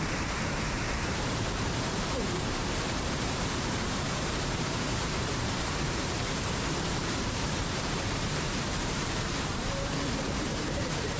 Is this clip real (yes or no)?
no